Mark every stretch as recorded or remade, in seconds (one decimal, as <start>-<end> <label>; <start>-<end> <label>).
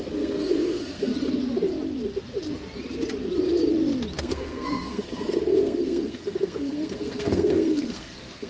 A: 0.0-1.1 remade; 1.1-4.2 recorded; 4.2-8.5 remade